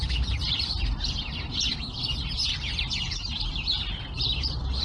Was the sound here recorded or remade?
remade